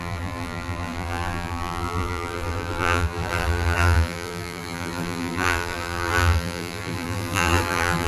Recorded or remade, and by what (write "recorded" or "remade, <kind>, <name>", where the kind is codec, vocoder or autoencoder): remade, vocoder, BigVGAN v2